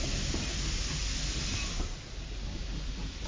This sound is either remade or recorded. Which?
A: recorded